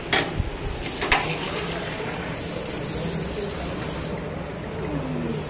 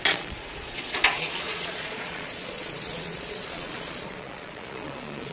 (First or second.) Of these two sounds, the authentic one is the first